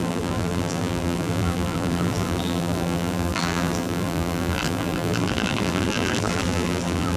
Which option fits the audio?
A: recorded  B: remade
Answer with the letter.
B